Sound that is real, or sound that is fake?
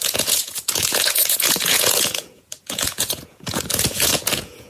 fake